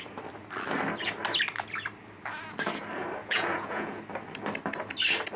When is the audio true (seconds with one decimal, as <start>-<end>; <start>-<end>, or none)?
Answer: 0.0-3.2; 4.0-5.4